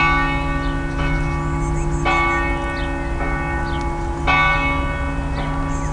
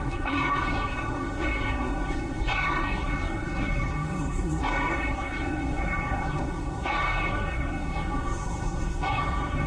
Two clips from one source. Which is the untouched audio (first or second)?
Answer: first